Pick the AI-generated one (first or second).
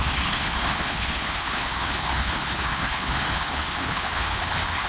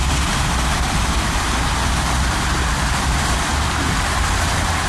first